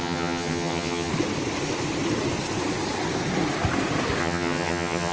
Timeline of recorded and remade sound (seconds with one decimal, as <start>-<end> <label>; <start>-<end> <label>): 0.0-1.1 remade; 1.1-4.2 recorded; 4.2-5.1 remade